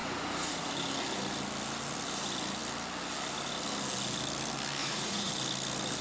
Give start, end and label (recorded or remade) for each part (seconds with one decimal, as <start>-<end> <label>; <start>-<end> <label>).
0.0-0.6 remade; 0.6-4.8 recorded; 4.8-5.3 remade; 5.3-6.0 recorded